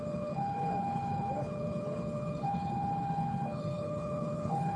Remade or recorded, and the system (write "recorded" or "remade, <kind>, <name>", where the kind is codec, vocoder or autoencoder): remade, codec, HILCodec